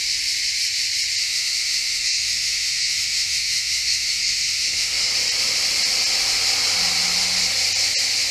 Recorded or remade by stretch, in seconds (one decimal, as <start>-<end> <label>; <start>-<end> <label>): 0.0-1.2 recorded; 1.2-5.1 remade; 5.1-8.3 recorded